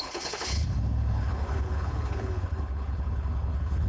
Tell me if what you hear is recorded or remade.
remade